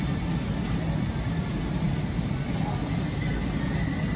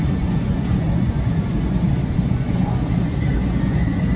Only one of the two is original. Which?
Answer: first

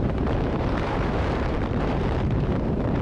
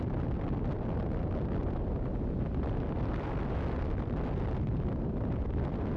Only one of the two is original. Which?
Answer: second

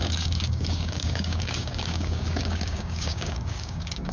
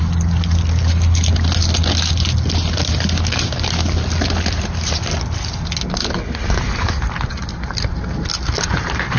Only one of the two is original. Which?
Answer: second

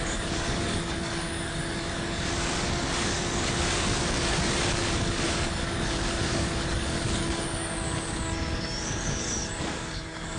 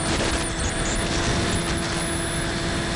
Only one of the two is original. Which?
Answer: second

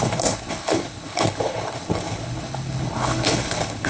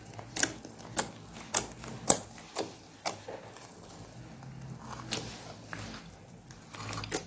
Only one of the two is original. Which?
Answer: second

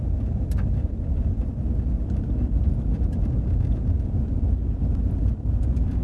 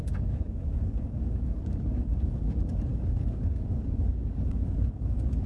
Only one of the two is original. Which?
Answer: first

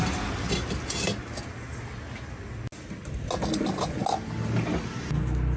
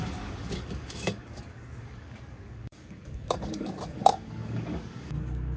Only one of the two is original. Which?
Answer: first